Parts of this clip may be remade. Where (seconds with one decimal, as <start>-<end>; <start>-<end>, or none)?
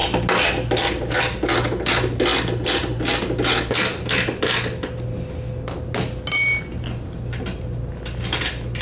none